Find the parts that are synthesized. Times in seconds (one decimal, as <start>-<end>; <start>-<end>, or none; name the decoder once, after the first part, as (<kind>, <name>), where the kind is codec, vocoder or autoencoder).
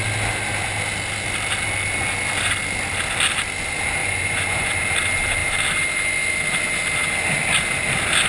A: 4.0-4.7 (vocoder, Vocos)